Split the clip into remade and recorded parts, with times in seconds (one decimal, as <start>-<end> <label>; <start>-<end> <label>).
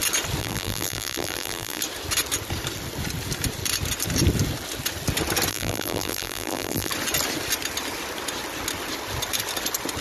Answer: 0.0-0.4 recorded; 0.4-1.8 remade; 1.8-5.5 recorded; 5.5-6.9 remade; 6.9-10.0 recorded